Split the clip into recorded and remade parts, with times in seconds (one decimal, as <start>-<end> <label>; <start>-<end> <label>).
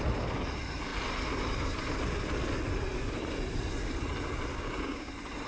0.0-4.5 recorded; 4.5-5.1 remade; 5.1-5.5 recorded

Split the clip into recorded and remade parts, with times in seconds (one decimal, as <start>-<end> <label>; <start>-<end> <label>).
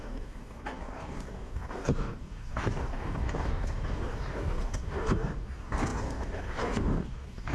0.0-7.5 remade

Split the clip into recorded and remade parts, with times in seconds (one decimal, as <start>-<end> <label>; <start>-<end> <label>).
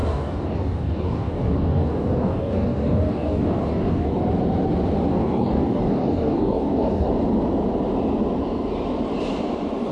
0.0-4.2 remade; 4.2-5.1 recorded; 5.1-7.1 remade; 7.1-9.9 recorded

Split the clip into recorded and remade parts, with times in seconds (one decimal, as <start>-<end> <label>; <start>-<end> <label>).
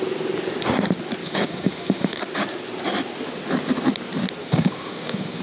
0.0-1.2 recorded; 1.2-2.2 remade; 2.2-4.4 recorded; 4.4-5.4 remade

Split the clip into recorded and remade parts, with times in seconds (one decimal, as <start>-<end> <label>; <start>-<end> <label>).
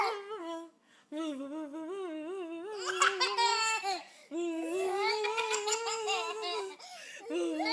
0.0-0.4 recorded; 0.4-1.4 remade; 1.4-3.5 recorded; 3.5-7.2 remade; 7.2-7.7 recorded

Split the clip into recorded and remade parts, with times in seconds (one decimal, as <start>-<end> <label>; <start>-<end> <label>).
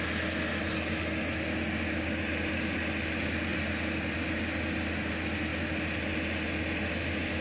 0.0-7.4 recorded